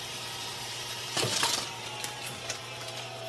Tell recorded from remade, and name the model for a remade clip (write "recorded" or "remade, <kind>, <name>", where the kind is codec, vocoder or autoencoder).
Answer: remade, vocoder, BigVGAN v2